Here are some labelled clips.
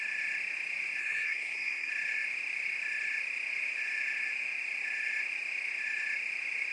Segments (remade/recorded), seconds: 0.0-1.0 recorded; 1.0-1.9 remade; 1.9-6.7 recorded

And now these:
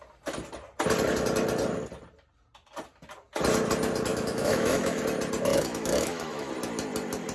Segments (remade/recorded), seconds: 0.0-4.1 recorded; 4.1-5.0 remade; 5.0-5.5 recorded; 5.5-6.5 remade; 6.5-7.3 recorded

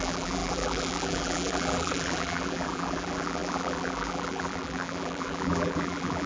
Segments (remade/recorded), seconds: 0.0-6.3 remade